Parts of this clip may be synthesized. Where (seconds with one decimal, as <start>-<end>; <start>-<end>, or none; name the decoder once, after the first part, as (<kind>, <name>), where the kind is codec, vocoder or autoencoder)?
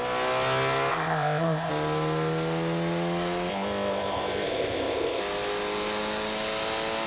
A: 0.9-1.7 (codec, ZipCodec); 3.5-5.2